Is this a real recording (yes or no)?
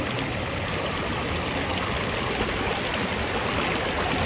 yes